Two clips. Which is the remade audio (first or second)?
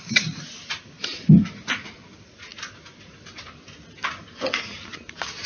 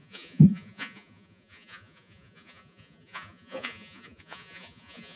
second